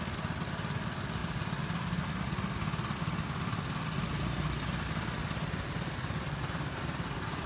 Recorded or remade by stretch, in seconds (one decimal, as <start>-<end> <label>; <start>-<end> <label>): 0.0-7.5 recorded